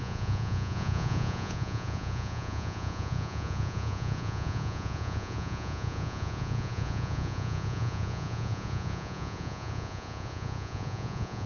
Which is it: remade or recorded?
remade